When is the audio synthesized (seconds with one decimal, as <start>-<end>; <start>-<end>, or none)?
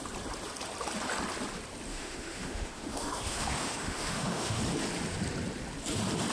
1.9-4.6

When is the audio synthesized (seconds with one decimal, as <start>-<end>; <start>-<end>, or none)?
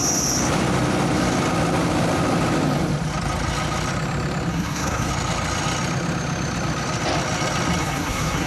4.5-5.1; 7.8-8.5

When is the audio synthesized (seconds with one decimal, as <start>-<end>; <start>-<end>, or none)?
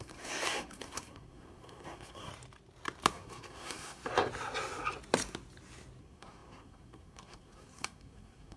0.0-2.3; 3.1-4.0; 6.0-8.6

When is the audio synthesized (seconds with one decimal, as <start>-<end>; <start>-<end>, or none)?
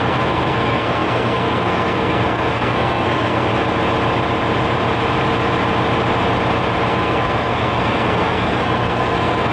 0.0-3.5; 6.9-9.5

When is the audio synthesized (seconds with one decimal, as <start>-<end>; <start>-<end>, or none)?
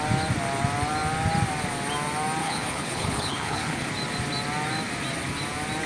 2.4-3.9